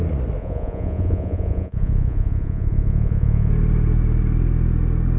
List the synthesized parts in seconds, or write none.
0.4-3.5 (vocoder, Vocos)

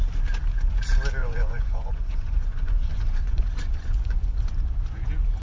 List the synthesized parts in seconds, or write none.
1.2-4.4 (vocoder, Vocos)

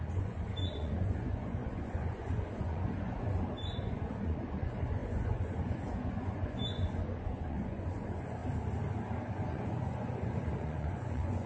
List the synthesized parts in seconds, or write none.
0.0-8.4 (vocoder, Vocos); 9.3-11.5